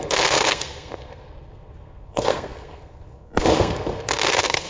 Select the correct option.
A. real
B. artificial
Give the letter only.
B